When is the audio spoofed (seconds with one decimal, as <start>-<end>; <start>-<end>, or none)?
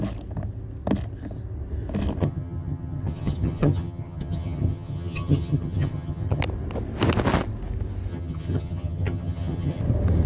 2.2-6.4; 8.1-9.8